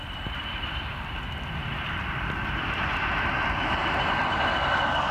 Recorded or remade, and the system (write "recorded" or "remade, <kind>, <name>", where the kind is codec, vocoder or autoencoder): remade, vocoder, BigVGAN v2